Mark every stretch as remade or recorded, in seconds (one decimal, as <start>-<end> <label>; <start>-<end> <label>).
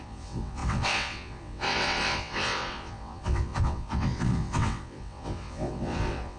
0.0-6.4 remade